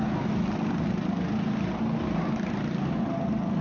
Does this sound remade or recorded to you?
recorded